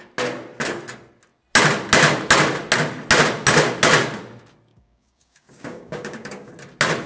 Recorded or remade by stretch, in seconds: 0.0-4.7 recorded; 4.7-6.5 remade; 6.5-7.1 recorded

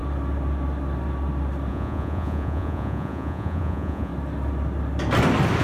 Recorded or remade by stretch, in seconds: 0.0-1.7 recorded; 1.7-4.1 remade; 4.1-5.6 recorded